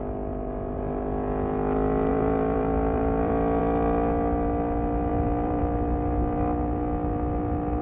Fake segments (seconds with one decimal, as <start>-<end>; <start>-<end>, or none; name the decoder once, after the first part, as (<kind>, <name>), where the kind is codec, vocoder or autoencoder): 2.1-3.6 (vocoder, BigVGAN v2); 5.1-5.6

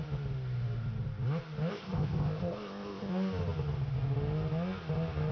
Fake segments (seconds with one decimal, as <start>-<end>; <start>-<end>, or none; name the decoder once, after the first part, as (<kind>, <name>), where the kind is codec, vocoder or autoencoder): 1.7-3.1 (codec, ZipCodec)

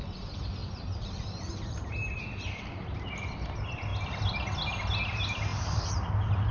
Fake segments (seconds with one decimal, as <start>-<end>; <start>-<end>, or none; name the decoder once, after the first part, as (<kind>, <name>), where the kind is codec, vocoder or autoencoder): 0.6-2.2 (vocoder, BigVGAN v2); 5.5-6.1